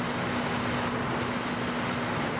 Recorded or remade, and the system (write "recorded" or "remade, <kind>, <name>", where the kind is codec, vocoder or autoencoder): recorded